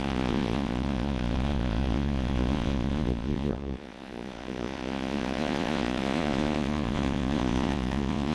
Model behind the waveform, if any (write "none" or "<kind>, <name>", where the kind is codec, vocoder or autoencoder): vocoder, Vocos